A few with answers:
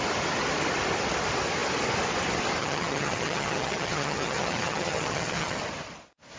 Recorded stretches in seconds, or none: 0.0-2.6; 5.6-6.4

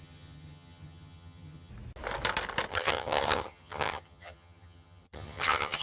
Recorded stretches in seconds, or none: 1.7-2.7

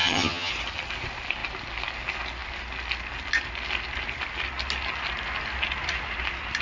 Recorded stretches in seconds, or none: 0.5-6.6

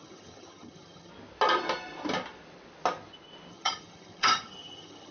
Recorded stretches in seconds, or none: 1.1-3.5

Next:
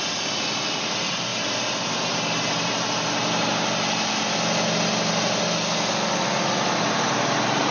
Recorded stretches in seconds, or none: 0.0-7.7

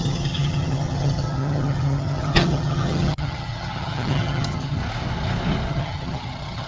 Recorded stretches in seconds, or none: 4.8-5.7

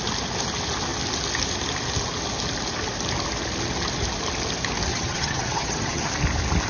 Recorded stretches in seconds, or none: 0.0-4.9; 6.1-6.7

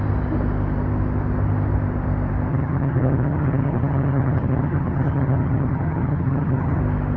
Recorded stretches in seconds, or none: 0.0-2.5; 6.8-7.2